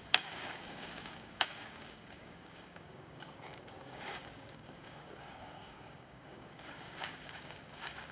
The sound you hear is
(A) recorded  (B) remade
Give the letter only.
B